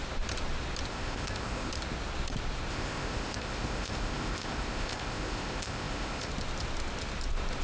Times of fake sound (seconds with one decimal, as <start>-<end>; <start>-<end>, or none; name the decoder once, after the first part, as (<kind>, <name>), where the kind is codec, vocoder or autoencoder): 0.9-1.7 (codec, ZipCodec); 2.7-6.3